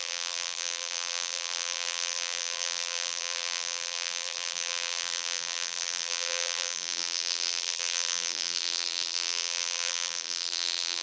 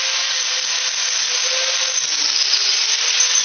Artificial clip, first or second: first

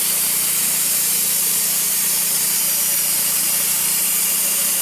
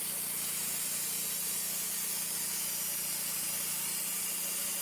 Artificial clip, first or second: first